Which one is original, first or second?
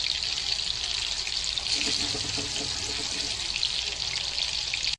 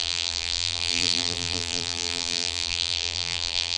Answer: first